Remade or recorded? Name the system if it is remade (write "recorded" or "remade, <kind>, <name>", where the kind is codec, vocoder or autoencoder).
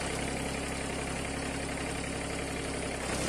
recorded